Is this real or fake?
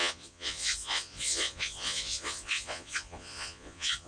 fake